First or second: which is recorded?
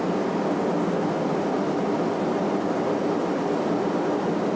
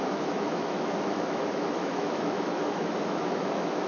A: first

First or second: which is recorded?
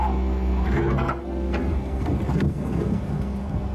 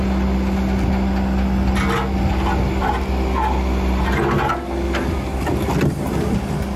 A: second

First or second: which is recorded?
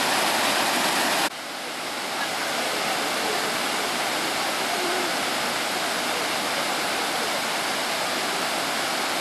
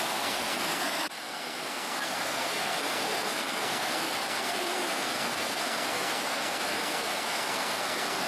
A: first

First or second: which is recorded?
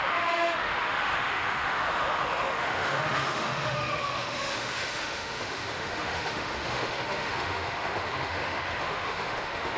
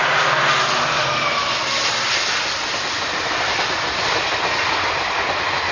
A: second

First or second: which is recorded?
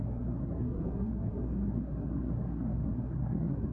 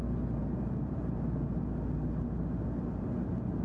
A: second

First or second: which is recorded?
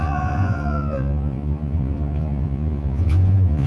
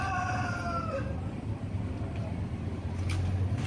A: second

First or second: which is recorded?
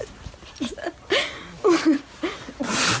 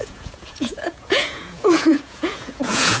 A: first